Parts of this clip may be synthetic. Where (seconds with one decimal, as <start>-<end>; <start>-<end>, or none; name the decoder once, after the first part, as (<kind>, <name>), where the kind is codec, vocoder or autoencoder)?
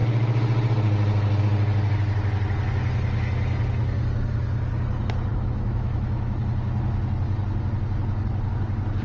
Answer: 5.3-6.4 (autoencoder, DAC-VAE)